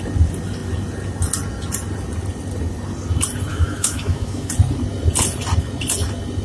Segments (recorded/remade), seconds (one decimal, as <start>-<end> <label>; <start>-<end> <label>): 0.0-3.5 recorded; 3.5-4.5 remade; 4.5-6.4 recorded